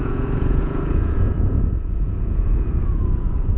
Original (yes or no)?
no